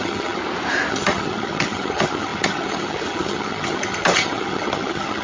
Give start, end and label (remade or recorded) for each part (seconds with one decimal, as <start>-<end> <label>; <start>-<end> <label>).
0.0-0.4 remade; 0.4-0.9 recorded; 0.9-5.2 remade